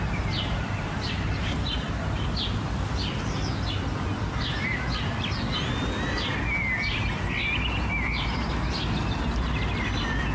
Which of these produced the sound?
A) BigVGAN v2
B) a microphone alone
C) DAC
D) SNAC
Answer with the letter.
B